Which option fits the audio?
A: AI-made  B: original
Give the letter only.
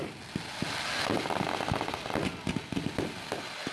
B